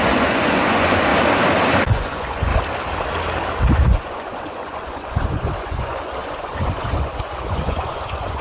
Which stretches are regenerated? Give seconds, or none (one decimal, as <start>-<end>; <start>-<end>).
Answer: 0.0-1.1; 1.9-2.5; 3.7-8.4